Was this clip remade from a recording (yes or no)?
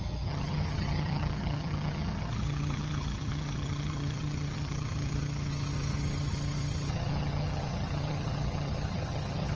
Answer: yes